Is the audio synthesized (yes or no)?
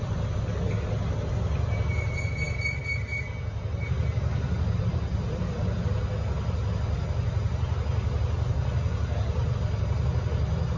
no